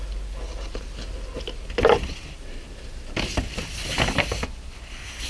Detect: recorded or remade recorded